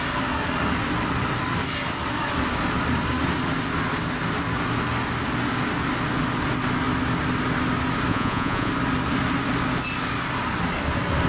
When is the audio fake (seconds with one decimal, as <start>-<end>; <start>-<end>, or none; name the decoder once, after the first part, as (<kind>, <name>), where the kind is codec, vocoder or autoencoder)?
8.1-8.7 (vocoder, Vocos)